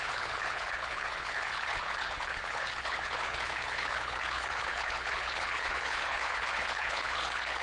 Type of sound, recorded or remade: remade